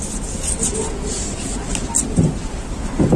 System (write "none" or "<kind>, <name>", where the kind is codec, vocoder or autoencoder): none